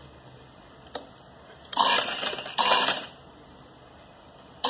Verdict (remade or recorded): remade